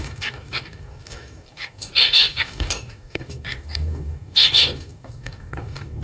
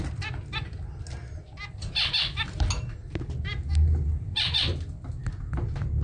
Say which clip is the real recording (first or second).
second